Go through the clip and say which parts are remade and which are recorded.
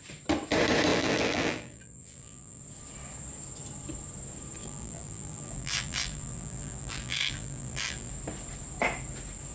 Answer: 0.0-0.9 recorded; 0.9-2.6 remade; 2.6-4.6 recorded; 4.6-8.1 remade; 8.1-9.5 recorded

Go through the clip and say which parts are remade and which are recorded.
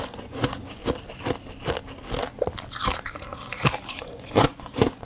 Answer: 0.0-0.8 remade; 0.8-3.9 recorded; 3.9-5.1 remade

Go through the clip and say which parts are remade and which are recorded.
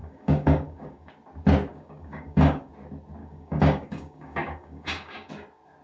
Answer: 0.0-1.1 remade; 1.1-1.7 recorded; 1.7-2.7 remade; 2.7-3.2 recorded; 3.2-5.3 remade; 5.3-5.8 recorded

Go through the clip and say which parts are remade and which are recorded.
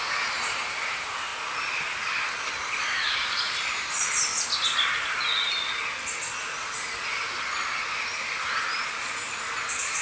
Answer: 0.0-1.3 remade; 1.3-3.4 recorded; 3.4-4.3 remade; 4.3-8.4 recorded; 8.4-10.0 remade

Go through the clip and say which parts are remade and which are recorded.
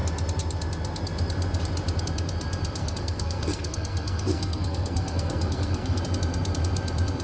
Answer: 0.0-2.8 recorded; 2.8-6.0 remade; 6.0-7.2 recorded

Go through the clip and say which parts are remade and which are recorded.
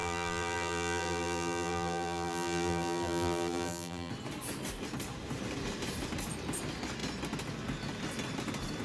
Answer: 0.0-4.1 remade; 4.1-8.8 recorded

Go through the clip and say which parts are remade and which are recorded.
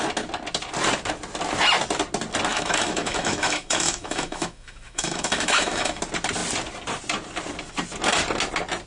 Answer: 0.0-2.5 recorded; 2.5-6.0 remade; 6.0-8.9 recorded